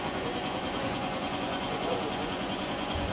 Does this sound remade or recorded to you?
remade